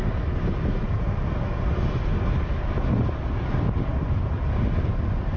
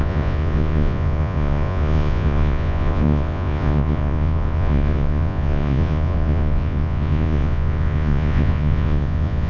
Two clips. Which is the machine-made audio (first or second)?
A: second